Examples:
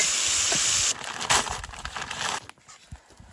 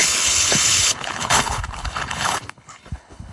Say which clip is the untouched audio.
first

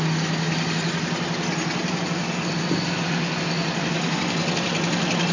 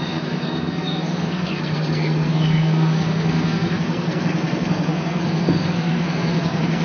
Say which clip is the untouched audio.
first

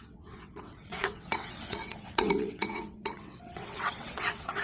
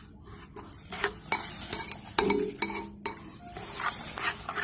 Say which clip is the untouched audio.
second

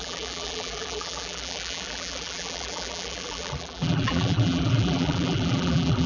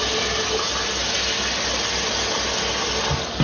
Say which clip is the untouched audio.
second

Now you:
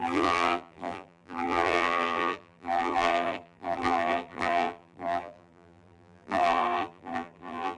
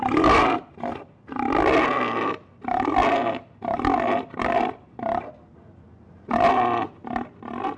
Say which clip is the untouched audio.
second